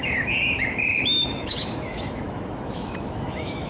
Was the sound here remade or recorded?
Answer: remade